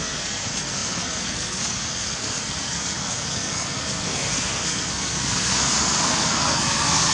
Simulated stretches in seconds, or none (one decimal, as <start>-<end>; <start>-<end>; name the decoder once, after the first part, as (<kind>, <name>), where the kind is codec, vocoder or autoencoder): 0.0-7.1 (codec, SNAC)